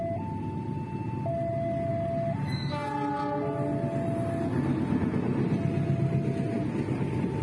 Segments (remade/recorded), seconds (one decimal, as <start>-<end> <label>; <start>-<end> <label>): 0.0-7.4 recorded